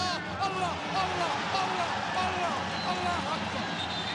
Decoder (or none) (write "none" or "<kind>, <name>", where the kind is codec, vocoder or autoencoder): none